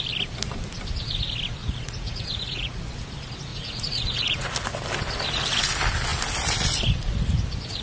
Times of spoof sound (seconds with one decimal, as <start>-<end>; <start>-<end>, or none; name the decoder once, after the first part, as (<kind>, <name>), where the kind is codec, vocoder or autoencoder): 1.6-2.8 (vocoder, Vocos); 3.5-4.5